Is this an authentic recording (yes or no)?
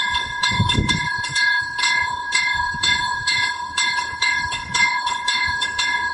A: no